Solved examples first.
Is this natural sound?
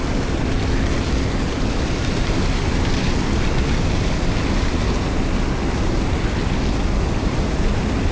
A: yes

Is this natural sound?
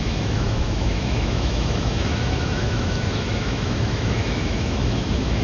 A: no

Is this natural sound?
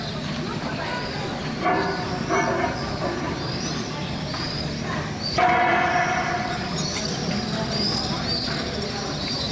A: yes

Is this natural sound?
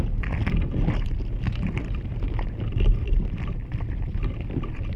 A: yes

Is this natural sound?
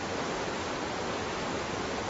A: yes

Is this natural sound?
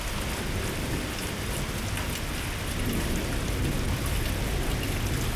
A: yes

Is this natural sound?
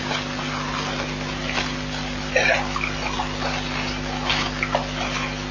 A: yes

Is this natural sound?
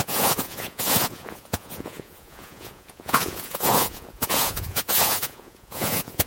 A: no